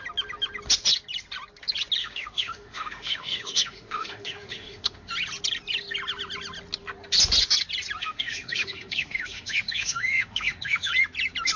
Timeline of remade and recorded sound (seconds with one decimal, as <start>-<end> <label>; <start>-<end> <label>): 0.0-2.0 recorded; 2.0-5.1 remade; 5.1-8.0 recorded; 8.0-10.9 remade; 10.9-11.6 recorded